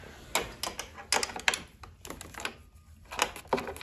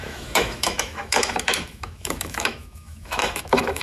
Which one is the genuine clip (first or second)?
first